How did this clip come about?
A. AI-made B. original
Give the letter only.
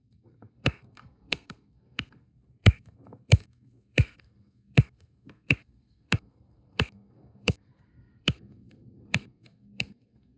A